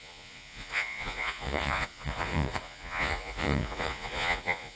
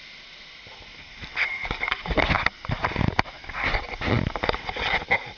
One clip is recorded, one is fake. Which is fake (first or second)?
first